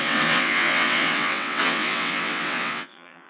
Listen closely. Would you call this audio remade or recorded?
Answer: remade